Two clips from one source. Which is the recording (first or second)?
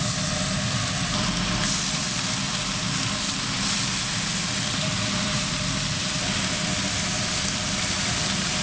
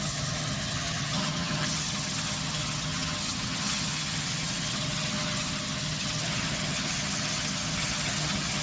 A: first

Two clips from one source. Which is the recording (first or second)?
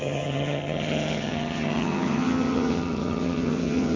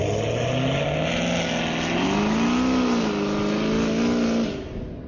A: second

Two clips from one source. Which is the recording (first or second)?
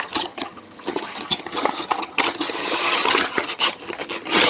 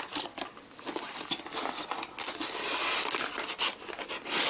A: second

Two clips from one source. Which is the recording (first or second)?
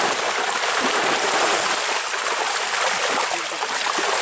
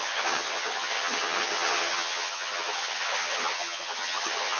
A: first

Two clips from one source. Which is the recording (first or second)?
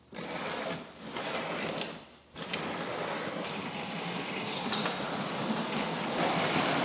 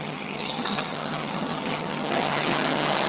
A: first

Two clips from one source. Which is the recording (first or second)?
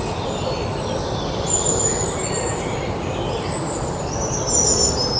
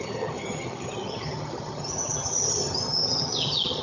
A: first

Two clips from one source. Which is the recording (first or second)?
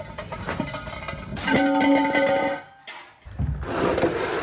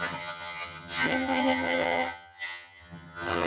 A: first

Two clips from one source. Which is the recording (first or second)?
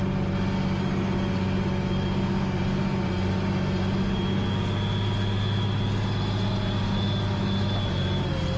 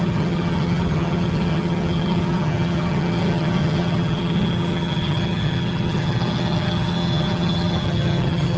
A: first